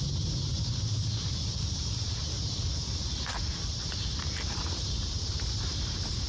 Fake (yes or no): yes